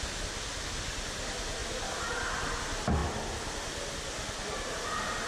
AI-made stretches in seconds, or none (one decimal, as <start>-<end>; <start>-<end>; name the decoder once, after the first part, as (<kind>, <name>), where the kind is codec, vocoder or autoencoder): none